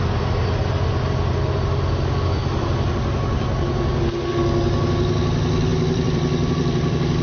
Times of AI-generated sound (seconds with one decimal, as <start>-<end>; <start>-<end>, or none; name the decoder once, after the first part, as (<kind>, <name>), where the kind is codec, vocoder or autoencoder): 5.7-7.2 (vocoder, BigVGAN v2)